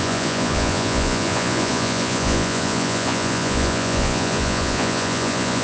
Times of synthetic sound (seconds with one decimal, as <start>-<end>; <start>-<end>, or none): 0.0-5.6